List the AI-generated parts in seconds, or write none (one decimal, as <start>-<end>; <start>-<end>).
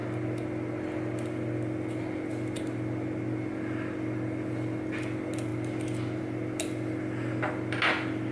none